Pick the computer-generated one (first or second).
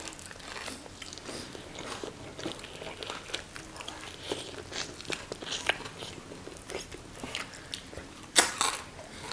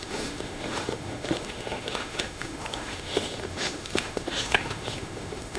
second